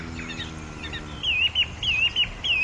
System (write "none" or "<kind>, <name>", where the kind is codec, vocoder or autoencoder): none